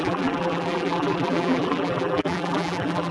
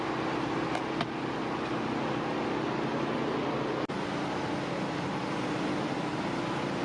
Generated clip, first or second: first